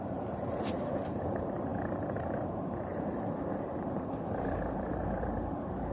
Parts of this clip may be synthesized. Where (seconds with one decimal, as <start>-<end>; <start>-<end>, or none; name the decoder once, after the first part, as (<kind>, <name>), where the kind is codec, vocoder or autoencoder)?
0.0-5.9 (vocoder, BigVGAN v2)